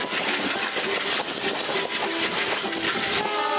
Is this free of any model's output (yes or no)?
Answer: yes